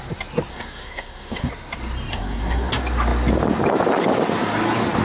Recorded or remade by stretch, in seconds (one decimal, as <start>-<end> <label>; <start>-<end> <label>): 0.0-0.5 recorded; 0.5-1.5 remade; 1.5-2.1 recorded; 2.1-2.7 remade; 2.7-5.0 recorded